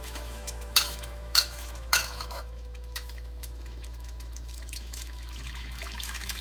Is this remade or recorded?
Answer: remade